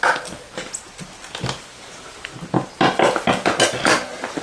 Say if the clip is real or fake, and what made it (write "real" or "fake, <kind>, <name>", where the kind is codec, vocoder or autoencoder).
real